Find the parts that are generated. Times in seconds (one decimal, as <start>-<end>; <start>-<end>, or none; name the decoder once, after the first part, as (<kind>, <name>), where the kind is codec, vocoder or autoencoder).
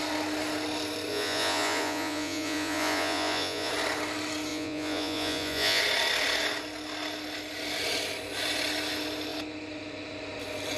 1.1-3.7 (vocoder, Vocos); 4.5-5.8